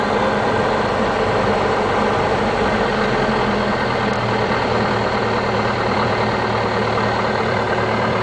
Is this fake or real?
fake